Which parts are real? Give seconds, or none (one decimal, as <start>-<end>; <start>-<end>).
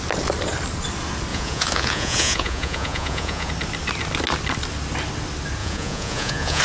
0.0-1.3; 3.5-5.6